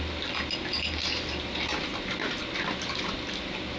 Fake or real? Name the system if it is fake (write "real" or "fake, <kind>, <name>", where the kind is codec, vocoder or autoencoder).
real